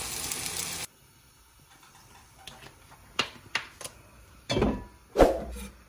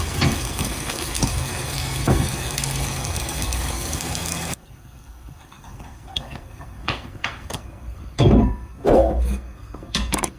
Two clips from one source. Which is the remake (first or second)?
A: second